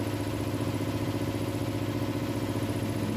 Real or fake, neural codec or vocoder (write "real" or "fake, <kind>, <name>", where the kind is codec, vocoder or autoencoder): real